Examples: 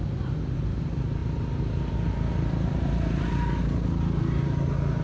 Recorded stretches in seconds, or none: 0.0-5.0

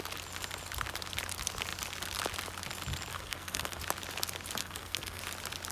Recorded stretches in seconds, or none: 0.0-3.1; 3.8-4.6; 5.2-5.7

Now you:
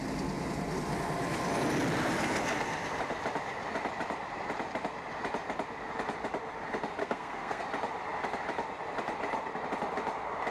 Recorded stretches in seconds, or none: 0.0-7.0; 7.6-10.5

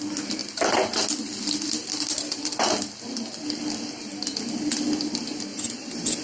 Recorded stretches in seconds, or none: 0.0-6.2

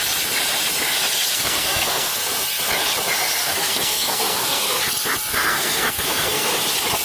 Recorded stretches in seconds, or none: 0.0-1.3; 2.1-3.4; 4.8-5.3; 6.5-7.0

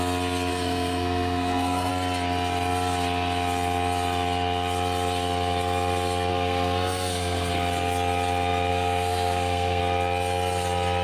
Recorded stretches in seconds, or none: 0.0-0.5; 1.9-6.3; 7.5-8.7; 9.8-11.0